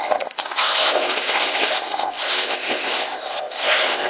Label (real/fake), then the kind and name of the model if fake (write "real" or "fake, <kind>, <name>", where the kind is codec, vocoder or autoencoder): fake, codec, ZipCodec